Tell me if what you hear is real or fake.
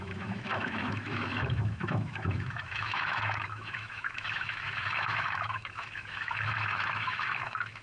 fake